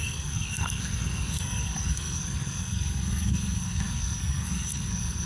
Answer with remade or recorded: remade